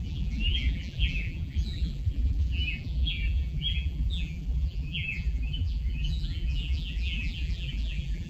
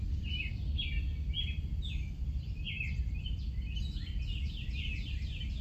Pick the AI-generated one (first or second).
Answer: first